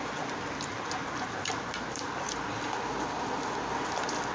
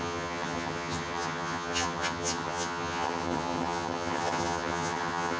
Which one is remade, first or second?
second